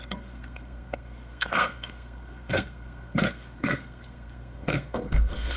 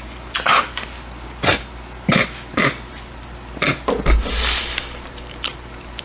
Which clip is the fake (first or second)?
first